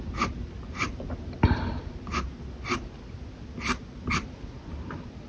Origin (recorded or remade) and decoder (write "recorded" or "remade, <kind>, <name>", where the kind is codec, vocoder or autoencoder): recorded